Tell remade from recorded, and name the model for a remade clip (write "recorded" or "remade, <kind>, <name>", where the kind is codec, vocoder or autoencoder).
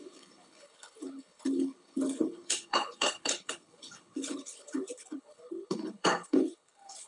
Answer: remade, codec, HILCodec